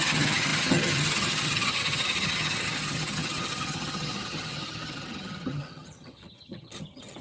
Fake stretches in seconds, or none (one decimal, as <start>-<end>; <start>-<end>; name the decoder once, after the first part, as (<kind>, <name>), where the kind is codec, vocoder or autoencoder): 0.0-7.2 (vocoder, HiFi-GAN)